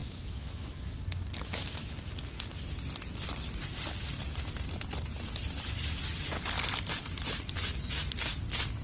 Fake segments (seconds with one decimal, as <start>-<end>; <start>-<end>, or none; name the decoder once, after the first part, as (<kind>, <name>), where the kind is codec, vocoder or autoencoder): 0.0-0.8 (autoencoder, DAC-VAE)